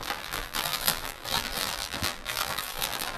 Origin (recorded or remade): remade